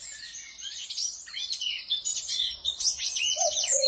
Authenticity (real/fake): fake